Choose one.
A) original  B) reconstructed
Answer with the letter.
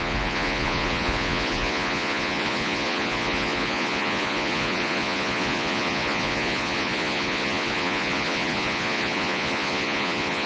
B